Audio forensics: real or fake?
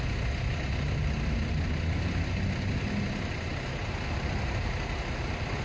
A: real